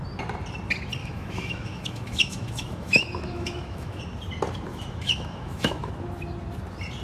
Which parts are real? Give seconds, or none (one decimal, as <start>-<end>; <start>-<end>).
0.0-1.0; 4.0-4.7; 5.9-7.0